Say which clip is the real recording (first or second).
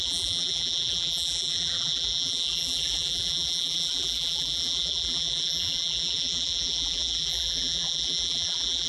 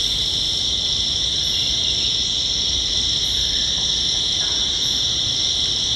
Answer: second